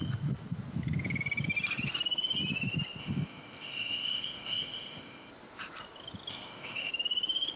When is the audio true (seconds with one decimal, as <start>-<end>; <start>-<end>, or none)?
0.0-3.0; 5.3-6.3; 6.9-7.6